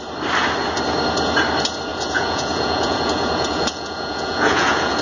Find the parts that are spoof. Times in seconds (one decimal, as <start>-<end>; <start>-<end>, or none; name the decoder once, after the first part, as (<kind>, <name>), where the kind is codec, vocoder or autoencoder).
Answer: 1.9-5.0 (vocoder, Vocos)